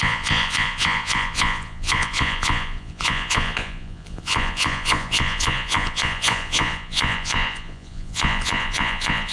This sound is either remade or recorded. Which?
remade